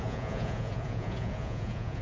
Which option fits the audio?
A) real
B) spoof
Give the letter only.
B